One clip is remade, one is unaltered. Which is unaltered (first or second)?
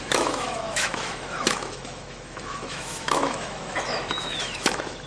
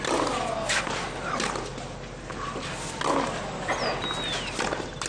second